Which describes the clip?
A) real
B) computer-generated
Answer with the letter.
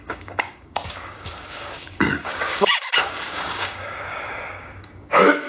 B